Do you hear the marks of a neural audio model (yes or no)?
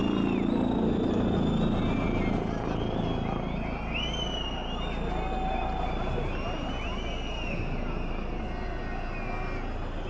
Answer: no